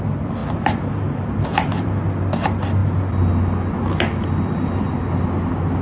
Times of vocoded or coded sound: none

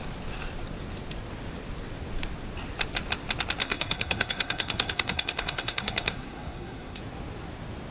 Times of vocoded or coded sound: 3.6-7.0

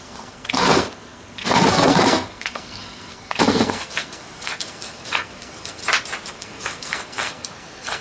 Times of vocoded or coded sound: 0.0-5.8; 6.3-8.0

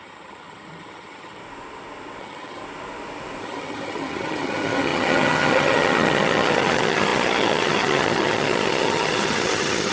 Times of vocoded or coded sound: 0.0-1.4; 2.2-2.6; 3.4-9.9

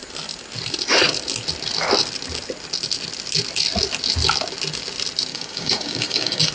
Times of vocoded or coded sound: 5.3-6.5

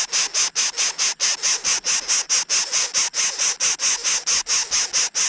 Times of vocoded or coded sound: none

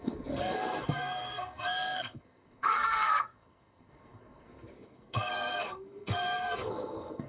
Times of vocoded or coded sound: 0.0-7.3

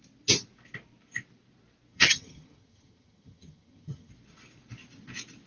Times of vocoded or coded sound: 1.9-4.1